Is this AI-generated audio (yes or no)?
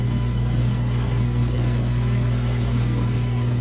yes